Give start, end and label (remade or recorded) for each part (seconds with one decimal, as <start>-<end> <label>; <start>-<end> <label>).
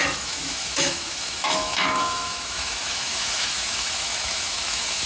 0.0-5.1 remade